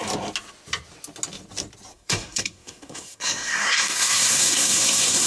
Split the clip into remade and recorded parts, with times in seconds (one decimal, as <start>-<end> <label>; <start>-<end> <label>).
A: 0.0-1.9 recorded; 1.9-5.3 remade